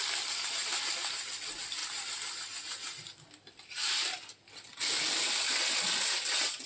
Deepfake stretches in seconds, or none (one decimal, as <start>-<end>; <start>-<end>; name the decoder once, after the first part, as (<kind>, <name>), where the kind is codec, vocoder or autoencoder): none